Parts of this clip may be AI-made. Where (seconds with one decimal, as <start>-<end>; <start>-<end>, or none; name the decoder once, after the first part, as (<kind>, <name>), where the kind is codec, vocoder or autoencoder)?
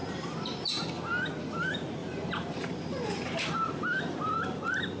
0.0-0.8 (vocoder, BigVGAN v2); 2.0-4.0